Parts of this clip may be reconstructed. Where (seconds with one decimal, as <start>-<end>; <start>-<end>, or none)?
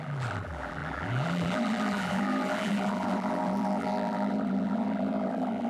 0.0-5.7